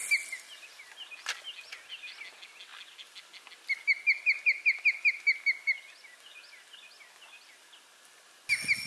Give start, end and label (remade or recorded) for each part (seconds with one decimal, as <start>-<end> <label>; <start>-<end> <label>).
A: 0.0-8.9 recorded